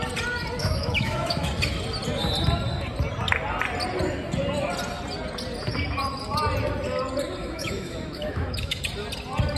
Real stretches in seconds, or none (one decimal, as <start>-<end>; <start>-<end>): 0.0-0.6; 1.5-7.4; 8.8-9.6